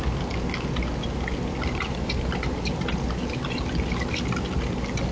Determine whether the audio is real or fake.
real